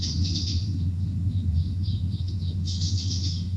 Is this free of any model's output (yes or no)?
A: no